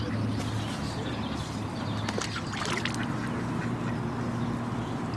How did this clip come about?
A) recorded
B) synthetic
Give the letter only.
A